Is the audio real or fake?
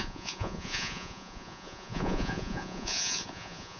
fake